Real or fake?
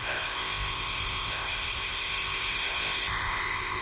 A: fake